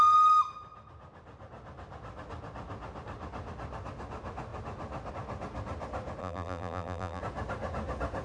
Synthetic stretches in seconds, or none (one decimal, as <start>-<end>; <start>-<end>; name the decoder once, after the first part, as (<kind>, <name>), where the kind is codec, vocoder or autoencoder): 6.2-7.2 (vocoder, BigVGAN v2)